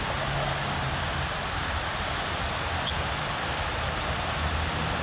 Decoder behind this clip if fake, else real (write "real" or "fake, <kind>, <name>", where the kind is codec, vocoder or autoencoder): real